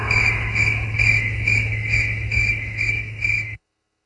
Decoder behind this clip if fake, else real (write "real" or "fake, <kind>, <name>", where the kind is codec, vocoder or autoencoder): fake, autoencoder, DAC-VAE